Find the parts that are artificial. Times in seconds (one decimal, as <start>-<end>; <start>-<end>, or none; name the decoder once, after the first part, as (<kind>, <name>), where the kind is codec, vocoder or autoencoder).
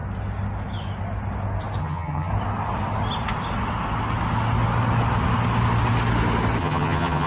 1.8-2.3 (vocoder, HiFi-GAN); 6.6-7.3